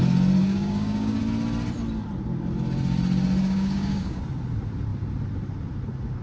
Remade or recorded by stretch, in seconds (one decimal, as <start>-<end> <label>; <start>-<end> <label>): 0.0-0.4 recorded; 0.4-1.2 remade; 1.2-3.4 recorded; 3.4-4.2 remade; 4.2-6.2 recorded